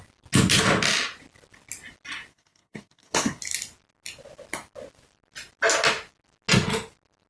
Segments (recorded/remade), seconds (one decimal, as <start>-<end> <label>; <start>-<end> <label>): 0.0-2.3 recorded; 2.3-3.4 remade; 3.4-7.3 recorded